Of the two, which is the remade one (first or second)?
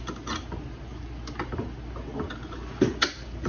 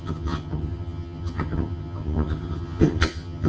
second